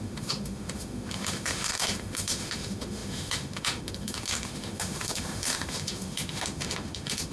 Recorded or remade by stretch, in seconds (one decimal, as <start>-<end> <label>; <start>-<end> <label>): 0.0-7.3 remade